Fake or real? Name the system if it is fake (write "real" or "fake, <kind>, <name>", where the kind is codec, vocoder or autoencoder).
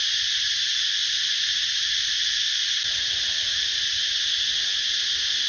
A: real